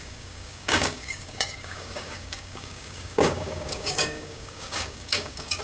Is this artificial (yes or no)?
yes